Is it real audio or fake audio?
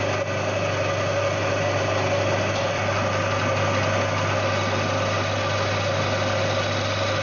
real